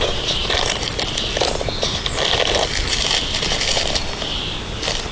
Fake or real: real